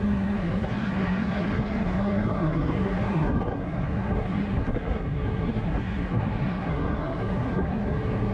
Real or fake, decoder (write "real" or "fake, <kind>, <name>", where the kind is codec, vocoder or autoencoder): fake, codec, SNAC